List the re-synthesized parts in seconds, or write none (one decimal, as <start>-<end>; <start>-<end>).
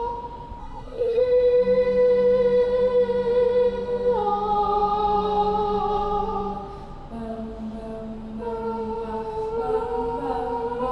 0.6-1.2